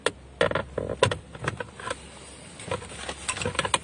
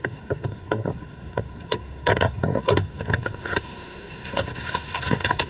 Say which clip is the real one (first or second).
first